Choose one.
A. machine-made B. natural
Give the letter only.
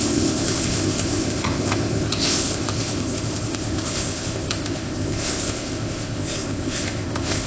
A